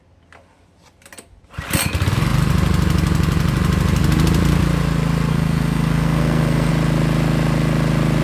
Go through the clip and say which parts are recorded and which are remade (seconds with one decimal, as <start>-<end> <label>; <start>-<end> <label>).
0.0-5.3 recorded; 5.3-6.7 remade; 6.7-8.2 recorded